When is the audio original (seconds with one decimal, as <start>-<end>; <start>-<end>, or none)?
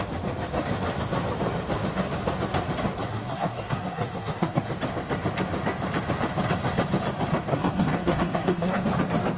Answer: 0.0-3.1; 4.7-7.5; 8.8-9.4